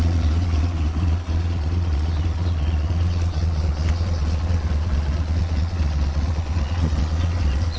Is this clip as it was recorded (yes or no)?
no